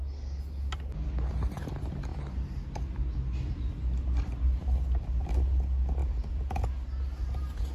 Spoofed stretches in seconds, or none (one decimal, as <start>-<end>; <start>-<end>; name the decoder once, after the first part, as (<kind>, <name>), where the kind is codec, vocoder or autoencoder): 6.0-6.7 (vocoder, Vocos)